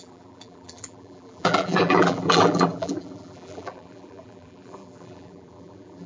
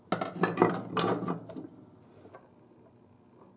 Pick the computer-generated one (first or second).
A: first